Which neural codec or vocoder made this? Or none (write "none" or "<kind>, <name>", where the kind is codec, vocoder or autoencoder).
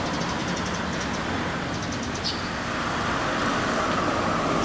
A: none